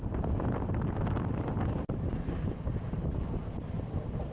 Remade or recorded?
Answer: recorded